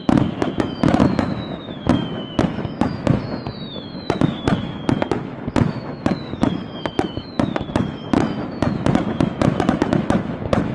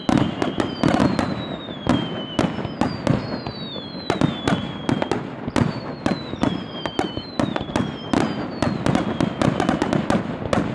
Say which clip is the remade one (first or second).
first